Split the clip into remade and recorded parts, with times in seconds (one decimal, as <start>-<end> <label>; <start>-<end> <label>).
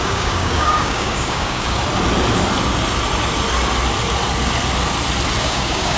0.0-1.8 remade; 1.8-5.4 recorded; 5.4-6.0 remade